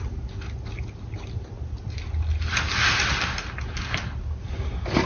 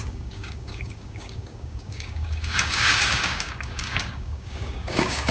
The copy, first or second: second